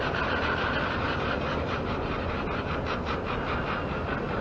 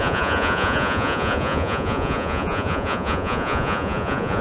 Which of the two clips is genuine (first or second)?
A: first